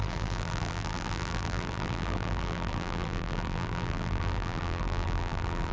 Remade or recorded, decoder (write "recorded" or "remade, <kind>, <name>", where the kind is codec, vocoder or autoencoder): remade, vocoder, BigVGAN v2